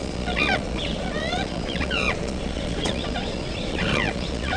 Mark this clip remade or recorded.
remade